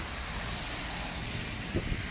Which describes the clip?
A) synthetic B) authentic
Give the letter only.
B